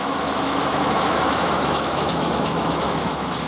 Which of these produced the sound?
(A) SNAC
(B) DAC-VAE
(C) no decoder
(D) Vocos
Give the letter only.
B